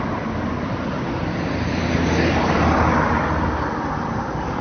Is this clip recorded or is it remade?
recorded